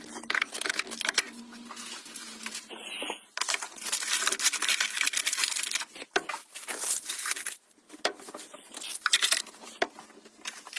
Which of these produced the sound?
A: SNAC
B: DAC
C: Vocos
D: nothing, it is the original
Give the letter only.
D